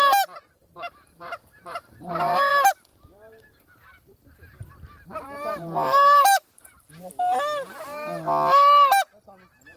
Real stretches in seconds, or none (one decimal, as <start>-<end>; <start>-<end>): 0.0-0.6; 2.5-2.9; 6.9-9.8